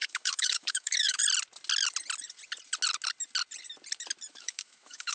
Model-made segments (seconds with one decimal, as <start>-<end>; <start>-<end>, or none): 0.0-1.2; 4.3-5.1